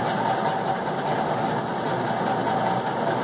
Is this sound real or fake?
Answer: real